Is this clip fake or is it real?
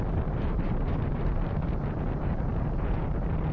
fake